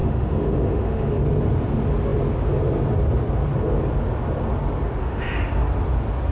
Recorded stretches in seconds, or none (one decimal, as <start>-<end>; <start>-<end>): 1.2-5.0; 5.5-6.3